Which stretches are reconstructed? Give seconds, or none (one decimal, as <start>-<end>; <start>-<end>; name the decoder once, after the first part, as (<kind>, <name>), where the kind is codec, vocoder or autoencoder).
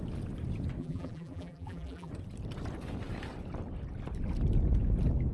0.8-2.1 (vocoder, BigVGAN v2)